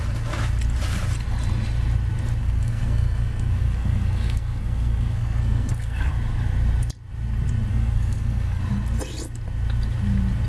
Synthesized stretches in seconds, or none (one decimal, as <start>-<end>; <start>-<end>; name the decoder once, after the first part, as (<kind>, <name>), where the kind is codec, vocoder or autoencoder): 2.4-6.1 (codec, SNAC); 7.7-8.6